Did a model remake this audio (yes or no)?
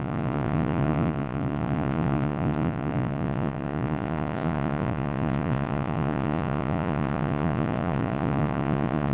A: yes